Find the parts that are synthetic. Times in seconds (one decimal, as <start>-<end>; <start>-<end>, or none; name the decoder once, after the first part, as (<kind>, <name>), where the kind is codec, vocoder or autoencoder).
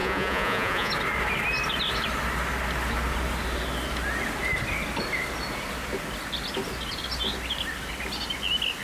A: 0.0-0.9 (vocoder, Vocos)